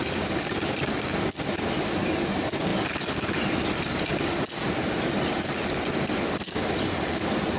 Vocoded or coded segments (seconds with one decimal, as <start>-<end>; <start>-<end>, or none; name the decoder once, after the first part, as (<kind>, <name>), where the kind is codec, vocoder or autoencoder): none